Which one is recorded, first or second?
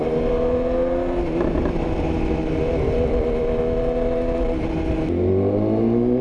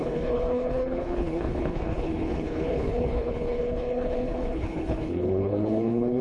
first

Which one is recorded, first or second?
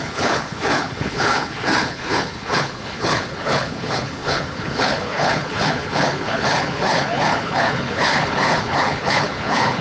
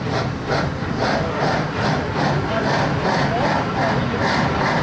second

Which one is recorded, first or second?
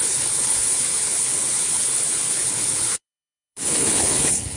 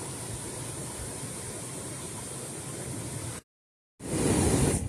second